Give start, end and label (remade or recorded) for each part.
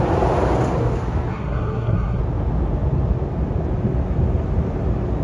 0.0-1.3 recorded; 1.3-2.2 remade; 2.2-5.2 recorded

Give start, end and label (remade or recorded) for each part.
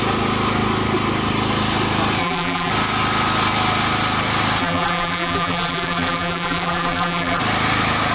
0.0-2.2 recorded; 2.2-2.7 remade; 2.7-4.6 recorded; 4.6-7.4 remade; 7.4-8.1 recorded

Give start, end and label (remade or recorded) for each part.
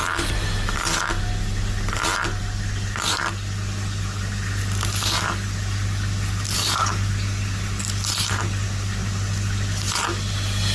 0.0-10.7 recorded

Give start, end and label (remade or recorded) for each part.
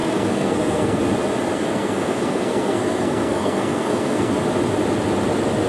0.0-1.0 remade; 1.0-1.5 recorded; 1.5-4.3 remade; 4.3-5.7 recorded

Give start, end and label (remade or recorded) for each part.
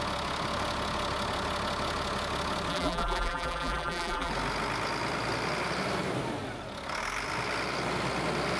0.0-2.7 recorded; 2.7-4.3 remade; 4.3-8.6 recorded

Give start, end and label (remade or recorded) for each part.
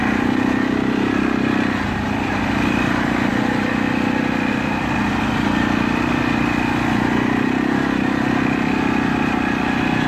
0.0-10.1 recorded